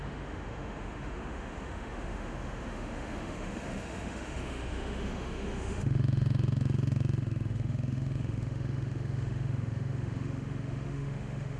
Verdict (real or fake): fake